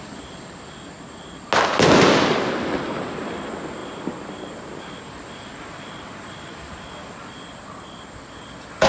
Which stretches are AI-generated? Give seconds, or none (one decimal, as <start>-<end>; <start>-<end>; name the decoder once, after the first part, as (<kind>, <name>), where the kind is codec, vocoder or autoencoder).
none